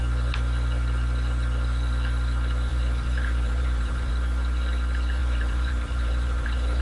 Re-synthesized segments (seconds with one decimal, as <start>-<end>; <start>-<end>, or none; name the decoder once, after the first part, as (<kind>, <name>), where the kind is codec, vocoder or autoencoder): 2.7-4.1 (vocoder, BigVGAN v2); 5.2-6.8